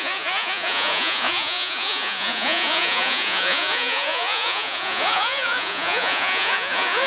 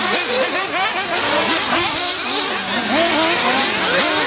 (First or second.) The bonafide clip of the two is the second